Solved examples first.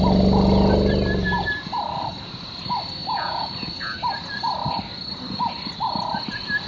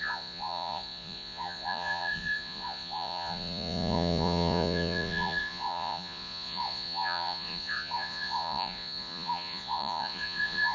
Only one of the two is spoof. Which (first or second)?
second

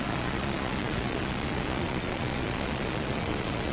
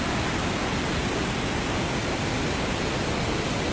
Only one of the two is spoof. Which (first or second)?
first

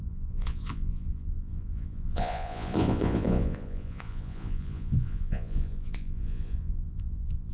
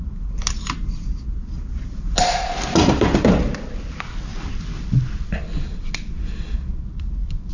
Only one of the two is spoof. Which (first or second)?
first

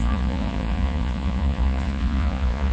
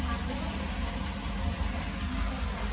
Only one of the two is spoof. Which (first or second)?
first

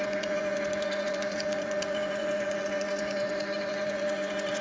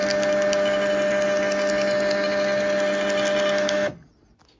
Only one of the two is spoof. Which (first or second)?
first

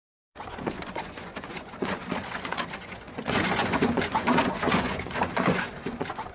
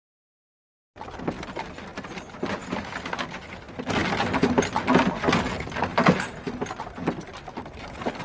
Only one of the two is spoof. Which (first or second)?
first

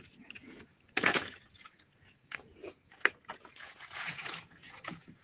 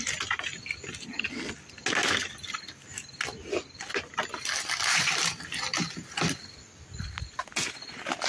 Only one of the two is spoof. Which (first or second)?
first